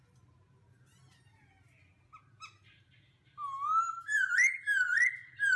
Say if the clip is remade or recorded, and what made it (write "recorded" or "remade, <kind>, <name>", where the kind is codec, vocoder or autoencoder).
recorded